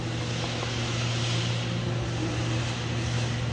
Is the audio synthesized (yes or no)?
no